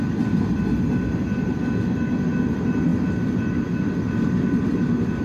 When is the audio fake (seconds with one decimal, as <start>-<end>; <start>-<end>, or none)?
none